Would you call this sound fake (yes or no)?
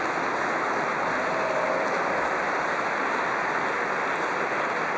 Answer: no